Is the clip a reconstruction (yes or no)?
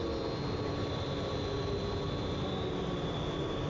no